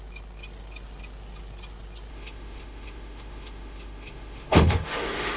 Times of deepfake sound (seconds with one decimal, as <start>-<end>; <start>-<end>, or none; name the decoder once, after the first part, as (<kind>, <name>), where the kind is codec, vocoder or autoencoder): 2.1-5.4 (autoencoder, DAC-VAE)